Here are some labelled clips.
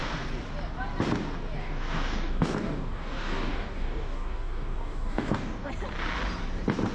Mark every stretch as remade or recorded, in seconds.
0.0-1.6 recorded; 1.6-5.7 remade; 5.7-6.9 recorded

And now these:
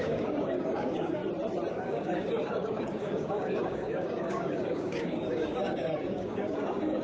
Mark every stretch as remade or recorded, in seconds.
0.0-1.2 remade; 1.2-1.7 recorded; 1.7-7.0 remade

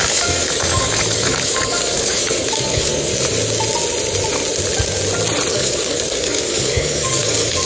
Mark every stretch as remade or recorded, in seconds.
0.0-3.1 remade; 3.1-5.5 recorded; 5.5-7.7 remade

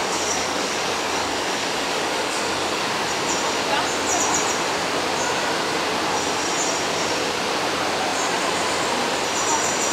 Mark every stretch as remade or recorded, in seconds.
0.0-2.8 remade; 2.8-9.9 recorded

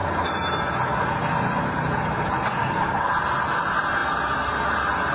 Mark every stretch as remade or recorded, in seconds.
0.0-2.6 recorded; 2.6-3.1 remade; 3.1-5.1 recorded

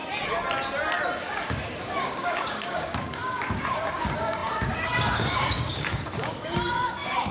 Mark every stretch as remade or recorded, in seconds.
0.0-1.2 recorded; 1.2-7.3 remade

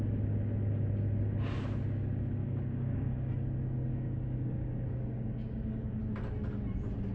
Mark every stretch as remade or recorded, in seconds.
0.0-2.4 recorded; 2.4-3.3 remade; 3.3-3.9 recorded; 3.9-6.0 remade; 6.0-7.1 recorded

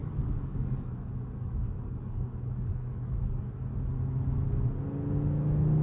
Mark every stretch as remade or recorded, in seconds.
0.0-3.5 remade; 3.5-5.8 recorded